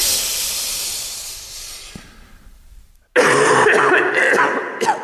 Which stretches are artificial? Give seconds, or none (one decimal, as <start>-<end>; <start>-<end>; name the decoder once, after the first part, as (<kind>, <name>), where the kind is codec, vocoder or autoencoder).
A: 0.0-3.0 (vocoder, BigVGAN v2)